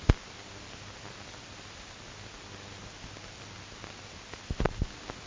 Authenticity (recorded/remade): recorded